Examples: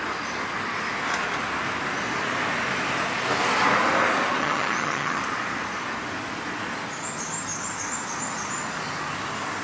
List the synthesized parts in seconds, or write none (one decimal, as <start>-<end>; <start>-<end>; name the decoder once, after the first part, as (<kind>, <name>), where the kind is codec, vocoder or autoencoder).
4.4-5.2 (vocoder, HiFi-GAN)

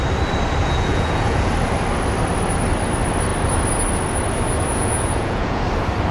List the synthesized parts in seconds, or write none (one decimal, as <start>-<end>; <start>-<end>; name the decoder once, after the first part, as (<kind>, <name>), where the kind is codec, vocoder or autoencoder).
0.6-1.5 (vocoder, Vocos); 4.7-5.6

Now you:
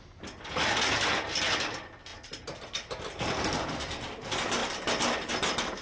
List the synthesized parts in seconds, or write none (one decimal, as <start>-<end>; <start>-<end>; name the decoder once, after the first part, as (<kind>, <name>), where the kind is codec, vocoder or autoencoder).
none